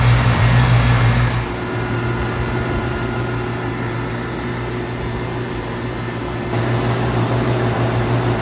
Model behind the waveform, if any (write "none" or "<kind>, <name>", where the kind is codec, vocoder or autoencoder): vocoder, BigVGAN v2